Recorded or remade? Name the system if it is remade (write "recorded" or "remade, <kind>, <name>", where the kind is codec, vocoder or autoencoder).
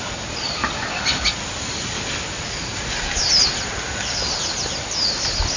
recorded